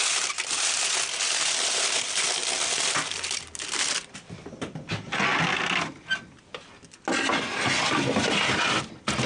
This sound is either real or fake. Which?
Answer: real